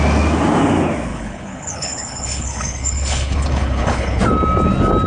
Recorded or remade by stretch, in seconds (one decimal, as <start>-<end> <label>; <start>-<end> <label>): 0.0-1.1 recorded; 1.1-4.2 remade; 4.2-5.1 recorded

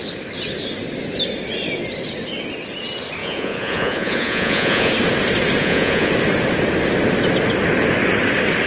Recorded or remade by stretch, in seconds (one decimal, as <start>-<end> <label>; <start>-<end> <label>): 0.0-3.2 recorded; 3.2-4.9 remade; 4.9-5.6 recorded; 5.6-6.1 remade; 6.1-8.7 recorded

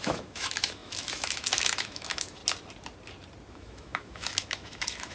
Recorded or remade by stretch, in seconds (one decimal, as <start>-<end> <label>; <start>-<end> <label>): 0.0-2.4 remade; 2.4-3.5 recorded; 3.5-5.1 remade

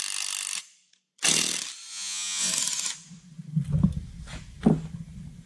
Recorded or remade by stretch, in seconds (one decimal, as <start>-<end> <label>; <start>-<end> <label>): 0.0-1.9 recorded; 1.9-2.5 remade; 2.5-5.5 recorded